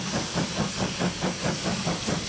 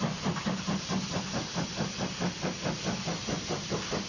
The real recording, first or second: second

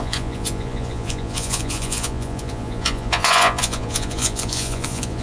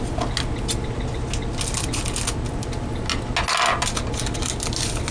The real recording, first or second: second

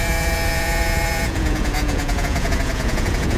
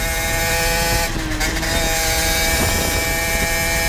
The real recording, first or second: second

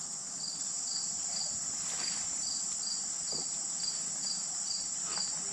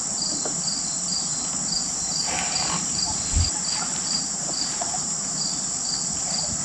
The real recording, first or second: first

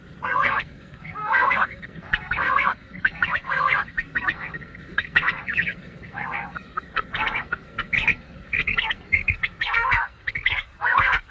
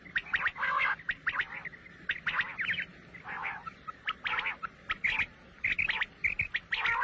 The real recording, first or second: second